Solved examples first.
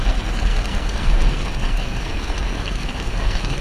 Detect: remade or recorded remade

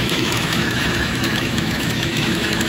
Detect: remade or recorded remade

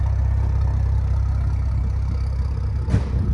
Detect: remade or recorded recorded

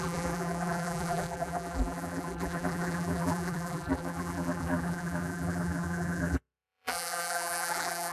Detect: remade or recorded remade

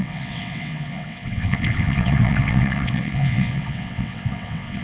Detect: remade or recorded remade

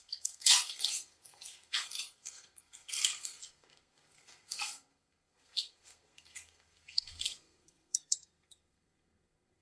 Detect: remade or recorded remade